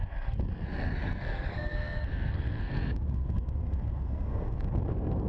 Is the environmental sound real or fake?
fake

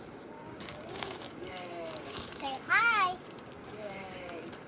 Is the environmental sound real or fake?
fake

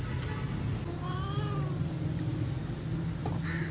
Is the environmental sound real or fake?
real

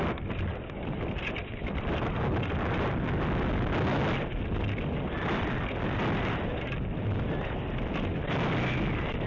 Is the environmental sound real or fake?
real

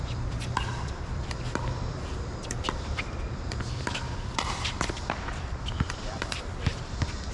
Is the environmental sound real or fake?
fake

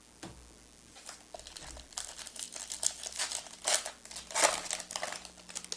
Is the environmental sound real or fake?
real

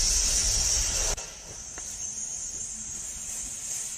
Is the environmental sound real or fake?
real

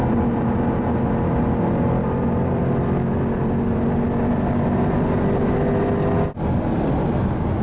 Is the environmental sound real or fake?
real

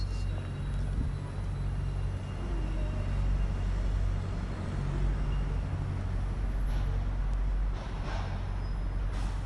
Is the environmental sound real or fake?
real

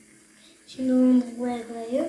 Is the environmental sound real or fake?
real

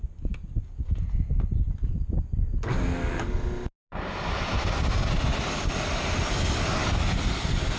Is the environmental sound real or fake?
real